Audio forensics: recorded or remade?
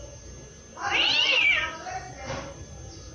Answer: recorded